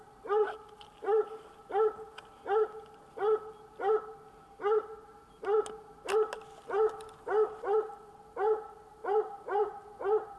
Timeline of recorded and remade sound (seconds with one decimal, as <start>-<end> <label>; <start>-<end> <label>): 0.0-10.4 recorded